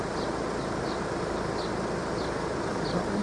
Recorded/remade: recorded